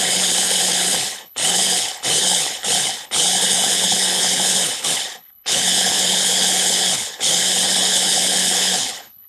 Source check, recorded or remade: remade